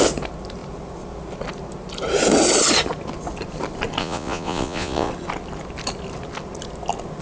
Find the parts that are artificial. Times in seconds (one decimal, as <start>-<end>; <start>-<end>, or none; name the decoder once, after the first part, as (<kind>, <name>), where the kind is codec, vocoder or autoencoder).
4.0-5.1 (vocoder, Vocos)